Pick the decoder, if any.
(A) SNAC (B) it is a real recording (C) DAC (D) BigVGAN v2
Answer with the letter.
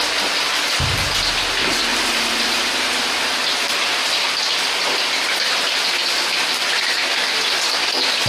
B